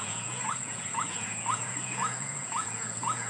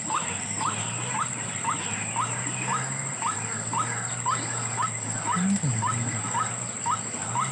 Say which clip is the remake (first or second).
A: first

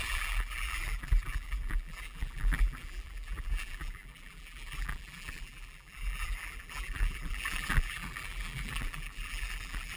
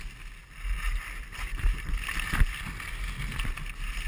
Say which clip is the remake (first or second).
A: first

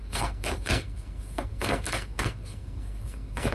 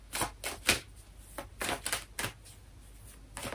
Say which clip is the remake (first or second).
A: first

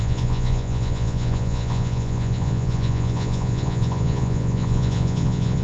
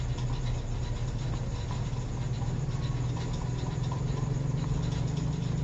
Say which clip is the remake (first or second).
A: first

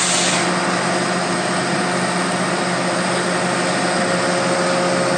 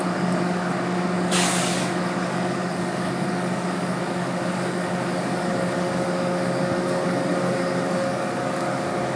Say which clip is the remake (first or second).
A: second